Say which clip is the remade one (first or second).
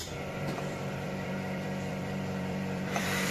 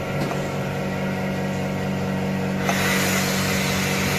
first